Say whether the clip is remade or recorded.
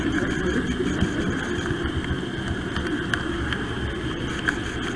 recorded